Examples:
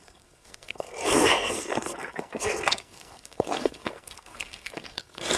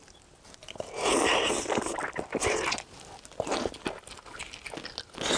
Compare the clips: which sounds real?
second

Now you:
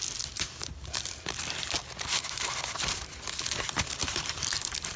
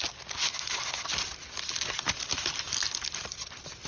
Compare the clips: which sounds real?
second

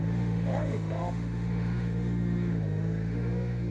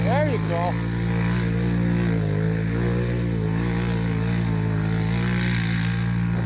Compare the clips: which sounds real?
second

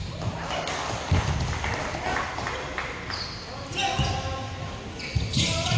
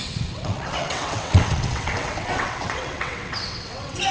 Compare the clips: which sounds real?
first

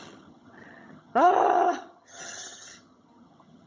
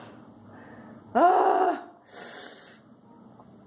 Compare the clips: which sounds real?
second